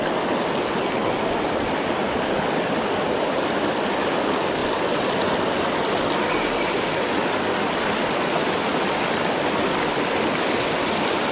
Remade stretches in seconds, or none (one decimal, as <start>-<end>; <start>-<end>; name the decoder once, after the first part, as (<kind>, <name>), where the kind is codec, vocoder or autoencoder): 4.6-6.1 (vocoder, BigVGAN v2)